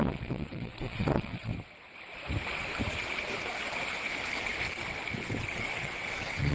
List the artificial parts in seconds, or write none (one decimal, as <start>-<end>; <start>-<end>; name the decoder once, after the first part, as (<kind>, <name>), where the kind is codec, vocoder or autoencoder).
0.0-1.5 (vocoder, WaveNeXt); 5.4-6.5